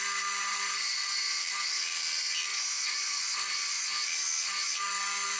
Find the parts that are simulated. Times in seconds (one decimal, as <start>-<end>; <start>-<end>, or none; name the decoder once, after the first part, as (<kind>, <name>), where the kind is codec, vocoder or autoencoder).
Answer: 0.4-1.3 (vocoder, Vocos); 2.5-3.8